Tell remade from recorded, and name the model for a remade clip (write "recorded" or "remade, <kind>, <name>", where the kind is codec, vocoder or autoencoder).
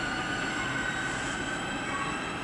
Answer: recorded